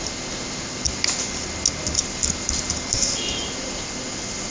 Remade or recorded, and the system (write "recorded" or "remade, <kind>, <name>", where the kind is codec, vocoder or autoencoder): recorded